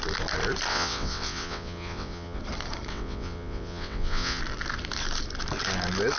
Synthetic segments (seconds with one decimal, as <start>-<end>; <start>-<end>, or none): 0.7-2.4; 2.9-4.4